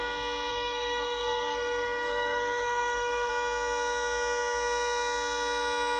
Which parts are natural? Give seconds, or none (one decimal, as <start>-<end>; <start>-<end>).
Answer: 0.0-0.5; 3.3-6.0